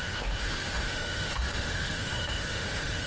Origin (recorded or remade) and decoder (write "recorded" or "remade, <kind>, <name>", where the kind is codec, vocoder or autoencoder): remade, autoencoder, DAC-VAE